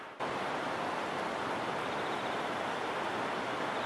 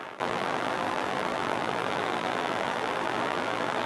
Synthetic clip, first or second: second